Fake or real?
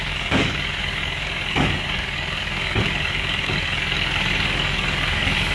fake